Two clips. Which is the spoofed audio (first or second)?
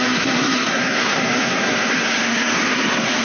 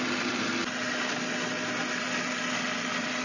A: first